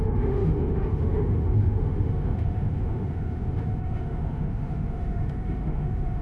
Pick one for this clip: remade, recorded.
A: remade